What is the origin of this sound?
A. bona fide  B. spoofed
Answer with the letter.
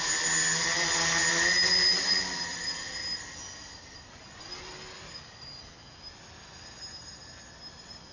A